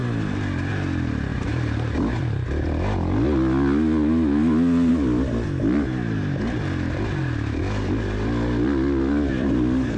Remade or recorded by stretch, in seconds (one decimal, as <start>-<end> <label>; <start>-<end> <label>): 0.0-10.0 recorded